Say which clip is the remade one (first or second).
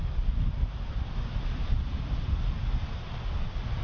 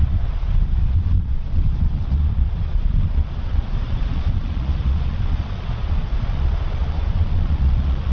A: second